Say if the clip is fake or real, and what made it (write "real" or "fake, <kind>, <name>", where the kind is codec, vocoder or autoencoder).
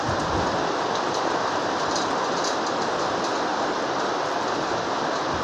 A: real